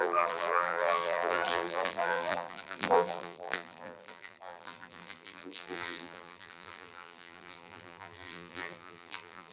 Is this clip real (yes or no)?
no